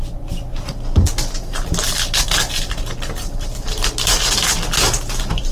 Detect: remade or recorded recorded